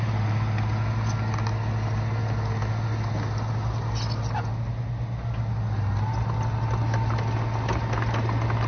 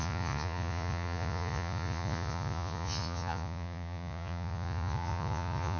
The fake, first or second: second